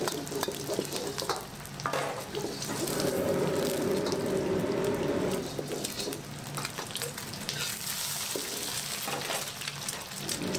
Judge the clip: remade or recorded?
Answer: recorded